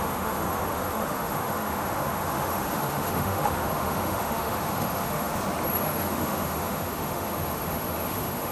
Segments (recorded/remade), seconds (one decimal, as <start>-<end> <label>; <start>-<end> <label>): 0.0-5.3 remade; 5.3-5.8 recorded; 5.8-8.5 remade